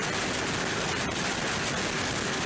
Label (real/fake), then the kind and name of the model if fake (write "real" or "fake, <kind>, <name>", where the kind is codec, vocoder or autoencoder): real